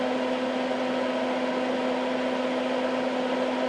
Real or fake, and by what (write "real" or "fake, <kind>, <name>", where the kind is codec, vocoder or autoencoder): real